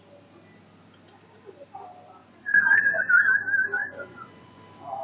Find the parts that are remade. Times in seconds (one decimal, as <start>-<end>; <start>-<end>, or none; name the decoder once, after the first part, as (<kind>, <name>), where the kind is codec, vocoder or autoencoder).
2.2-3.0 (vocoder, Vocos); 3.8-4.6

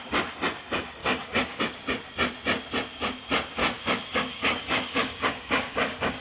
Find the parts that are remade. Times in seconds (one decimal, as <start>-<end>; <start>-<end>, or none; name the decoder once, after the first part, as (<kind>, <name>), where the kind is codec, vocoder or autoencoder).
1.0-1.6 (codec, DAC); 3.6-6.2

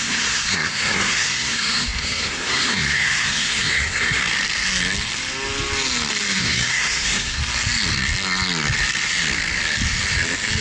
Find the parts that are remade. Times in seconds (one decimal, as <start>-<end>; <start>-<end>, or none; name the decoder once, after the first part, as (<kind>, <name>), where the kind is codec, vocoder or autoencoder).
0.0-4.2 (codec, SNAC); 6.4-7.4

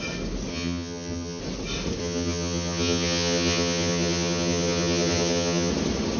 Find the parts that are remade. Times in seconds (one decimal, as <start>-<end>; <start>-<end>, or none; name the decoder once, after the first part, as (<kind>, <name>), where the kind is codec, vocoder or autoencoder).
0.5-1.4 (vocoder, HiFi-GAN); 2.0-5.7

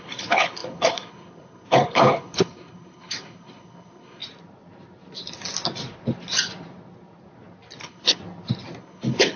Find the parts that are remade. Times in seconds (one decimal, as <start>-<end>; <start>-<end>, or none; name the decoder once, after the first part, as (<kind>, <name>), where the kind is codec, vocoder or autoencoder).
0.0-4.2 (codec, HILCodec); 7.8-8.2; 8.8-9.4

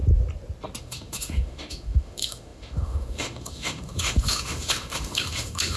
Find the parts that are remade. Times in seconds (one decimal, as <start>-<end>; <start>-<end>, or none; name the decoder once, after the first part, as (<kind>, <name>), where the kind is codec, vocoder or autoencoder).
0.8-5.8 (autoencoder, DAC-VAE)